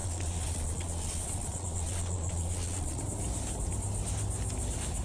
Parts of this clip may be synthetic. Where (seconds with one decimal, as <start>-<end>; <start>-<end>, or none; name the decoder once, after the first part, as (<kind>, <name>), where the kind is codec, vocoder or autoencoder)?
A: 0.0-3.0 (vocoder, Vocos)